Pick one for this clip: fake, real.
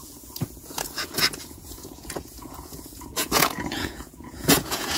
fake